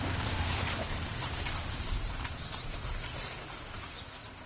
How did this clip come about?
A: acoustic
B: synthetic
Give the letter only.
B